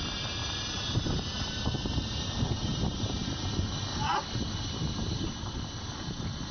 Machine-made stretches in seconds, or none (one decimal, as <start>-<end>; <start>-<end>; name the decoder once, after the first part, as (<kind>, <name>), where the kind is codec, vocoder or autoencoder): 0.4-3.4 (vocoder, BigVGAN v2); 3.9-5.2